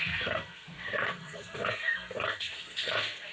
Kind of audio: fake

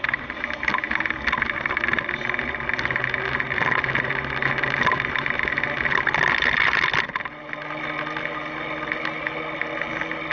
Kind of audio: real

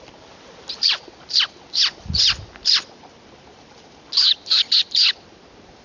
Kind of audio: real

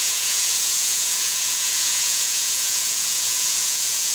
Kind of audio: fake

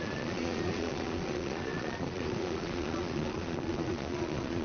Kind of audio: fake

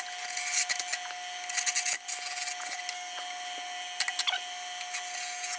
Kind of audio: real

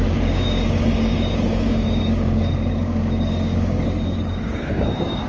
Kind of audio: fake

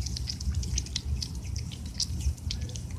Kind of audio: real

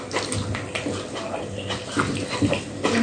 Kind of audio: real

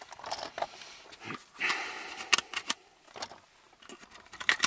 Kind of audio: real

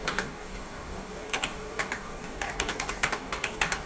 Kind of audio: fake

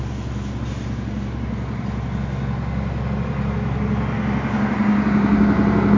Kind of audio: real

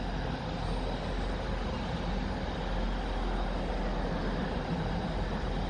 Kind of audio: real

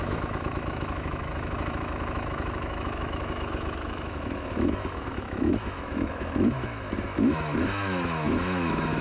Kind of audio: fake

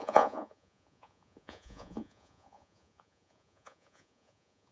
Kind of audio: fake